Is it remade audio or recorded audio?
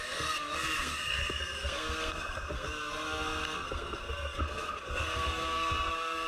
remade